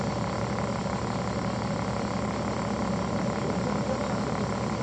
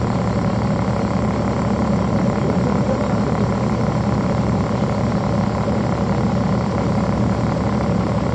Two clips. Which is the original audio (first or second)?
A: first